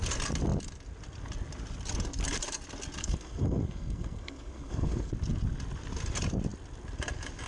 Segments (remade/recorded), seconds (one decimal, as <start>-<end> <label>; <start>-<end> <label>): 0.0-3.0 recorded; 3.0-5.1 remade; 5.1-7.5 recorded